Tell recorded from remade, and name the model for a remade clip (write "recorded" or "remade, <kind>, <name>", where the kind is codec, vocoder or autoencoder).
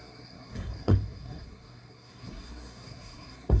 remade, codec, SNAC